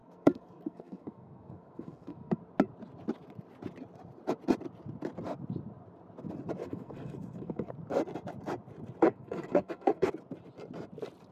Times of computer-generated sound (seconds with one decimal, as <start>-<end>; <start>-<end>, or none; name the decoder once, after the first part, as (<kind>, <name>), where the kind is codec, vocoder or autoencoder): 0.0-2.4 (codec, SNAC); 6.6-7.7; 9.1-10.1